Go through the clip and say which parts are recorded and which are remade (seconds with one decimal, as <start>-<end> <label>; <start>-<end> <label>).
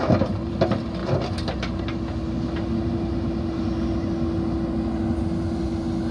0.0-6.1 recorded